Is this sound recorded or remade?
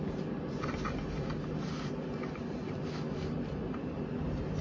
recorded